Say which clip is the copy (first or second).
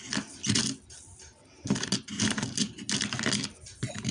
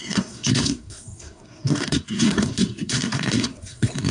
second